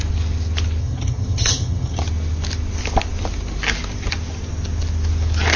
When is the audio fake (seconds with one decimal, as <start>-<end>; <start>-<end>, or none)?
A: 0.8-2.0